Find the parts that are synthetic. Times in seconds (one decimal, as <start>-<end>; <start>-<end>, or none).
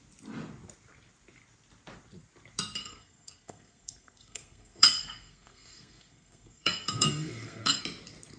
2.8-7.8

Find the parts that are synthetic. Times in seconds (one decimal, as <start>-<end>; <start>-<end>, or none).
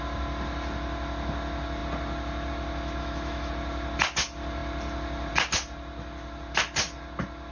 3.0-3.5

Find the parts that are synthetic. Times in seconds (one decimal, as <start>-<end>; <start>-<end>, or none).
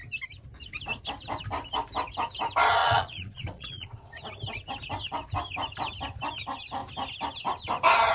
2.8-4.2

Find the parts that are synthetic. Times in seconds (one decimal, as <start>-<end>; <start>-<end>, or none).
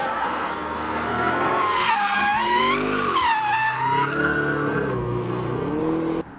0.0-2.6; 3.6-5.8